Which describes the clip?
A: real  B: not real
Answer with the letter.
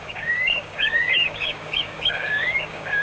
B